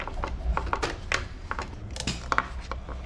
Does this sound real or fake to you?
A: real